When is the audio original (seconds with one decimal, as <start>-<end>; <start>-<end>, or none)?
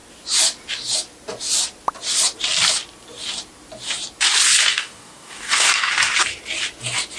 0.0-4.7; 5.9-7.2